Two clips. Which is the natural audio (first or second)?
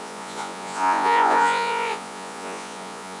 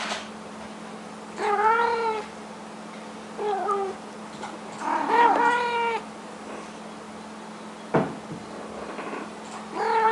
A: second